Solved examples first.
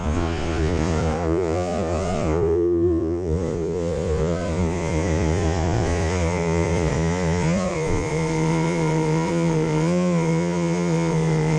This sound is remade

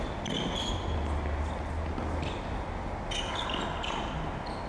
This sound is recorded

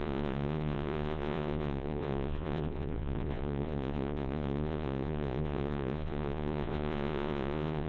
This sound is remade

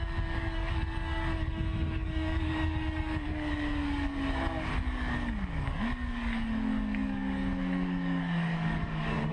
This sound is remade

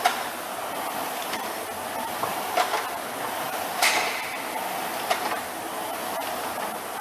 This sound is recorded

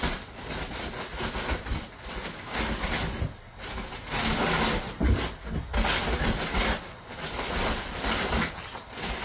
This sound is recorded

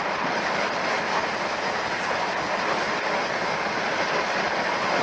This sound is recorded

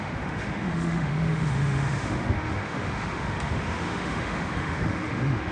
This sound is remade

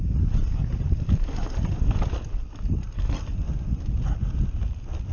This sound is recorded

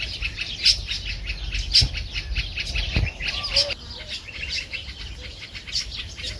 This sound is recorded